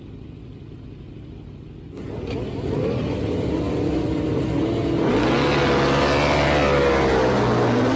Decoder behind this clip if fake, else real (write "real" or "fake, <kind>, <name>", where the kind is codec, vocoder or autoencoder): real